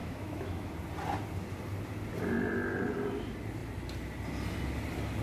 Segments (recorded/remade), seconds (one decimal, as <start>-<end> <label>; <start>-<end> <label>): 0.0-0.7 remade; 0.7-5.2 recorded